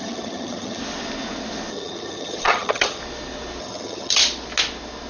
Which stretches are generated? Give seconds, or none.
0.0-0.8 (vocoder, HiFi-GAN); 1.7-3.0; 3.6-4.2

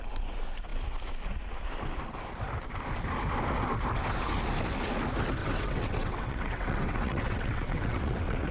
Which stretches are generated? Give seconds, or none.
5.4-8.5 (vocoder, WaveNeXt)

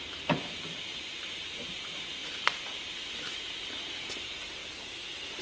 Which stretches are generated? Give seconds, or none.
0.0-2.2 (vocoder, BigVGAN v2); 4.1-4.6

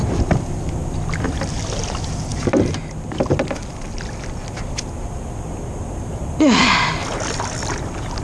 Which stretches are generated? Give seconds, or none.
none